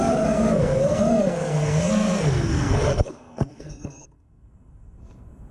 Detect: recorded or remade remade